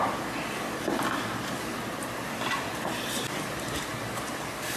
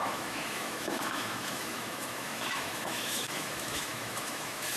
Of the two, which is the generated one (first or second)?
second